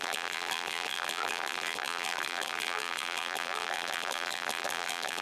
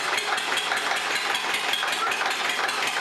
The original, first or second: second